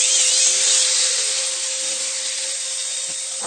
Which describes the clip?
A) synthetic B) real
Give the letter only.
A